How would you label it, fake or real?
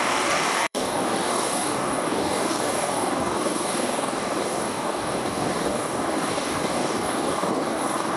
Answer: fake